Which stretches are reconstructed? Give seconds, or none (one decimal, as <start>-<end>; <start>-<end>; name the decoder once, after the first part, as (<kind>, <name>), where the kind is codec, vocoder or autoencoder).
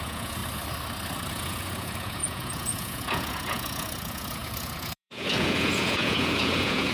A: 0.0-0.4 (vocoder, Vocos); 1.3-6.9